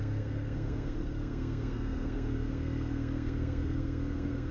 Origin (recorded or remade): remade